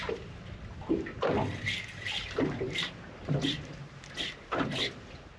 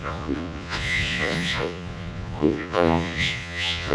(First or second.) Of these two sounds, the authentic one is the first